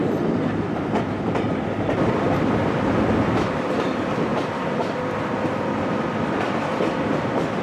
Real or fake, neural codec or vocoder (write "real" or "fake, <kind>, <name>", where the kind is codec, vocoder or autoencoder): fake, vocoder, BigVGAN v2